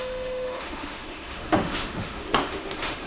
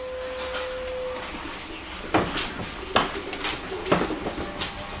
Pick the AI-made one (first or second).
first